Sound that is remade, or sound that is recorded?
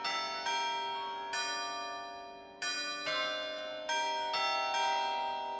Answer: recorded